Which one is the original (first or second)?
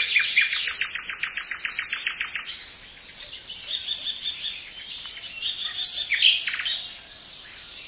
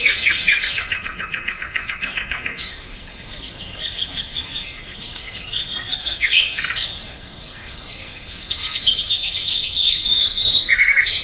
first